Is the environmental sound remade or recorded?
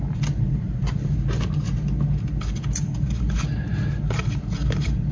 recorded